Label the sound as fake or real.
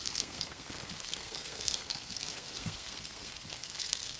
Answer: fake